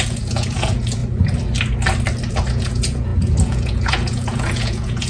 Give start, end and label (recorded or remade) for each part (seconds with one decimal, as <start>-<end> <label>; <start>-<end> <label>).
0.0-1.0 remade; 1.0-2.3 recorded; 2.3-5.1 remade